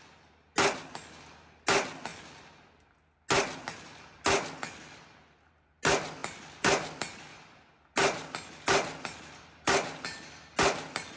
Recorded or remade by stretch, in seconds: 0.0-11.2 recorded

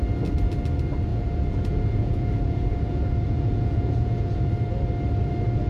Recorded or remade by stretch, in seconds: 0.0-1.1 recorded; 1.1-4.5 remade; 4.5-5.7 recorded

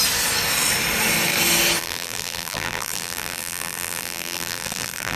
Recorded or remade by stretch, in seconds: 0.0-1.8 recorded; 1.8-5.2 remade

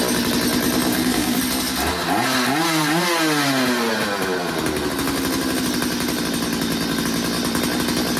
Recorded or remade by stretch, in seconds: 0.0-0.9 recorded; 0.9-1.4 remade; 1.4-8.2 recorded

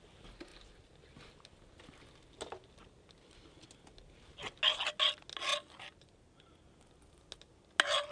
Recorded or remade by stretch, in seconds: 0.0-8.1 recorded

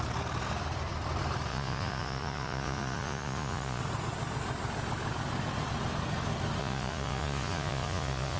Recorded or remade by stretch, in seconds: 0.0-1.5 recorded; 1.5-3.8 remade; 3.8-6.6 recorded; 6.6-8.4 remade

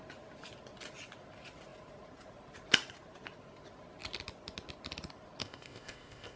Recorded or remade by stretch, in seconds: 0.0-5.4 recorded; 5.4-6.4 remade